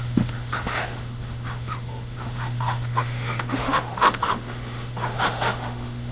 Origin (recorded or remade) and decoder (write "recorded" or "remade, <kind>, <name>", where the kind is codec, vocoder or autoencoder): remade, autoencoder, DAC-VAE